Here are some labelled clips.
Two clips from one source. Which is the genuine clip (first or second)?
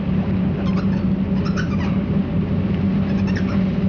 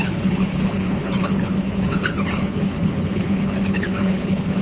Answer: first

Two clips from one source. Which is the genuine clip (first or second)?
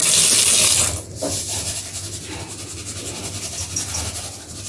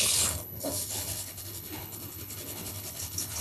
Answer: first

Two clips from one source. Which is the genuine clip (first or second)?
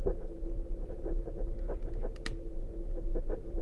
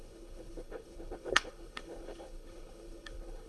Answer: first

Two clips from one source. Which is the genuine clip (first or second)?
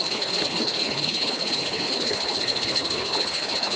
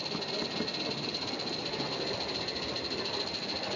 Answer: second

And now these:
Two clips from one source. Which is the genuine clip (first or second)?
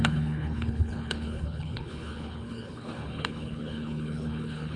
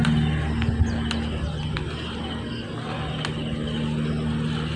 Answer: second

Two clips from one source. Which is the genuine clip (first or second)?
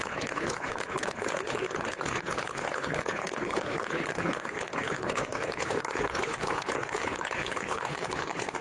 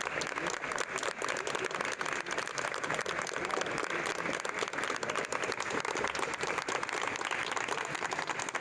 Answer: second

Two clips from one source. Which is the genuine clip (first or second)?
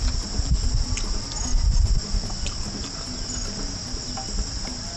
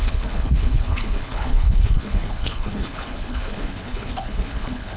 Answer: first